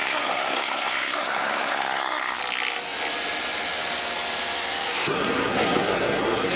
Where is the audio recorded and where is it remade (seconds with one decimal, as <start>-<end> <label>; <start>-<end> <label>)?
0.0-2.4 remade; 2.4-5.0 recorded; 5.0-6.6 remade